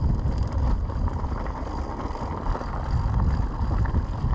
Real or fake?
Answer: real